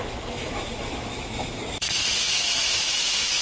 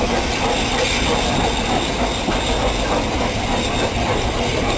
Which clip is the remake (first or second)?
first